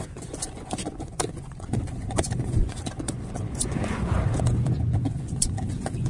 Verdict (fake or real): fake